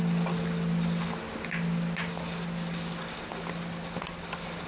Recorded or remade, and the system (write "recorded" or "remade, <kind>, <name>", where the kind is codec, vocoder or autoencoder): recorded